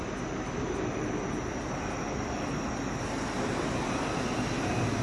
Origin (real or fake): real